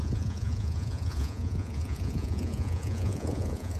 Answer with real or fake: fake